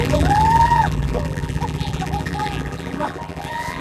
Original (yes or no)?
no